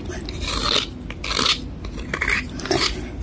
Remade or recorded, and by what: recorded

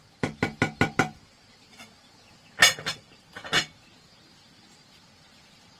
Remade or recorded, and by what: recorded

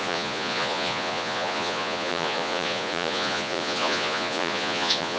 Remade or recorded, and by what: remade, vocoder, Vocos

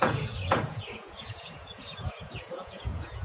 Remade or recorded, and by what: remade, vocoder, Vocos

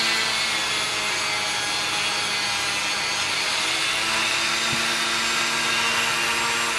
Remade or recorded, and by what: recorded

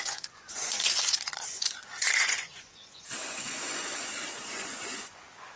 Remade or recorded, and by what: remade, vocoder, Vocos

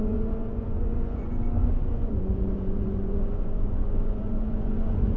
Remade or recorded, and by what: remade, vocoder, Vocos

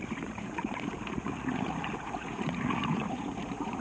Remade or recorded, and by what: remade, vocoder, Vocos